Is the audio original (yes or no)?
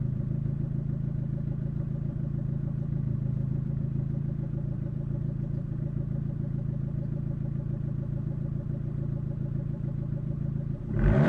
no